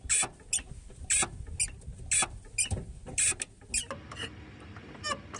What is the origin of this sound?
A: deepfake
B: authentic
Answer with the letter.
B